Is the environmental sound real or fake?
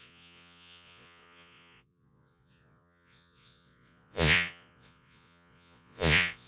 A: fake